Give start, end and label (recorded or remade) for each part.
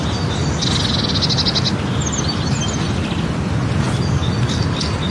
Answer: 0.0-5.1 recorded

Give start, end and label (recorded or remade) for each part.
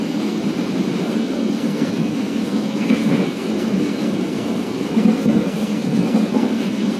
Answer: 0.0-0.4 remade; 0.4-1.0 recorded; 1.0-7.0 remade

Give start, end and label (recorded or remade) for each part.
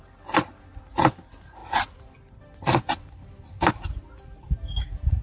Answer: 0.0-5.2 recorded